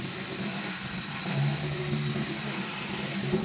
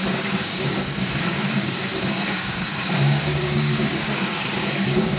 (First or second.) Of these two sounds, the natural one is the first